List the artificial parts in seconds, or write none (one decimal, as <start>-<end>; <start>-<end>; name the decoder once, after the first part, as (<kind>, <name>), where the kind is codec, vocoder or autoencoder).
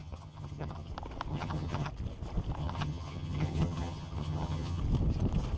0.0-0.9 (vocoder, HiFi-GAN); 1.3-1.9; 2.6-4.8